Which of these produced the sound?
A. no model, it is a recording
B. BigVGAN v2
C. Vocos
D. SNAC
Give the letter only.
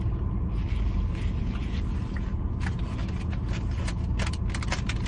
A